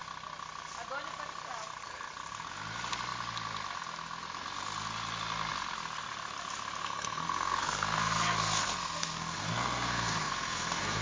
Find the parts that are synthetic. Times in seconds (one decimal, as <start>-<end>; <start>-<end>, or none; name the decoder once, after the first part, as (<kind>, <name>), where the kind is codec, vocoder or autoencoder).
6.8-11.0 (codec, SNAC)